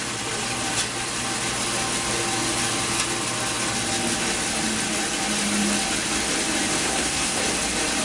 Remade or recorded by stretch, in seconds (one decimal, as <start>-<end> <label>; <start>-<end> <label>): 0.0-6.8 recorded; 6.8-7.4 remade; 7.4-8.0 recorded